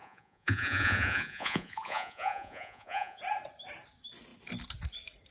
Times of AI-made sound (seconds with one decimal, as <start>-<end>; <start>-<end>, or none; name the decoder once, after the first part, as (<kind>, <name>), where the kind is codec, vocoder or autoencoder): 0.0-3.2 (vocoder, Vocos)